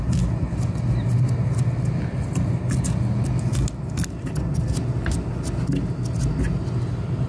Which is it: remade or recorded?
recorded